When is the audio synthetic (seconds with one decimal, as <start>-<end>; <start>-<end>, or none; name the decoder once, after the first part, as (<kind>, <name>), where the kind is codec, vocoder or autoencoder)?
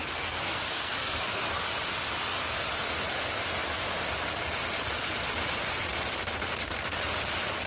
0.0-1.6 (codec, SNAC)